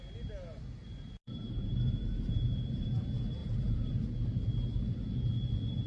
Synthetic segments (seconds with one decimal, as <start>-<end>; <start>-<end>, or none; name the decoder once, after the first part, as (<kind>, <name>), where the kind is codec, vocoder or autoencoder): 0.8-2.9 (vocoder, BigVGAN v2); 3.4-3.9